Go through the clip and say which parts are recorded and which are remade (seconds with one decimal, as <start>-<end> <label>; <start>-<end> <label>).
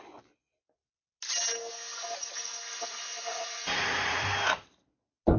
0.0-3.3 recorded; 3.3-4.2 remade; 4.2-5.4 recorded